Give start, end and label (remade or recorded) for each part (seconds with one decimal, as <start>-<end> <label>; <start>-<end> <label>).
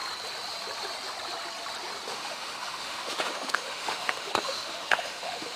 0.0-2.1 recorded; 2.1-5.6 remade